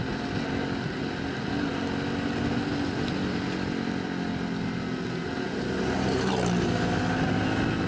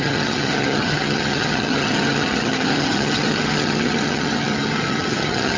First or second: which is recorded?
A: first